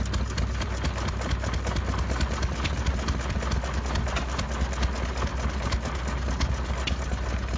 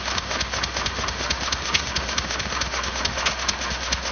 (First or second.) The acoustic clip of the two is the first